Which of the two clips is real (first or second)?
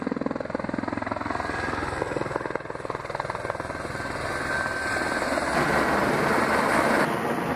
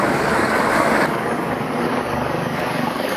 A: first